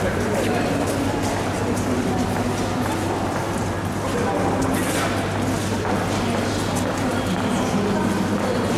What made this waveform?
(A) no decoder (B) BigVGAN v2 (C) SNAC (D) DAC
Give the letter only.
A